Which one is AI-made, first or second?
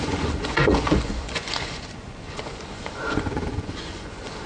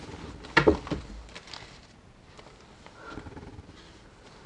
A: first